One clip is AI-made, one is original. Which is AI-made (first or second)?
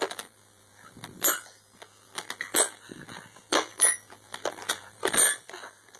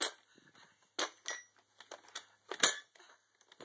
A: first